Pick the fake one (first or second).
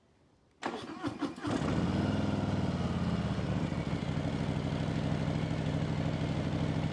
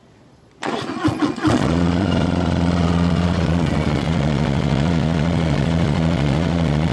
second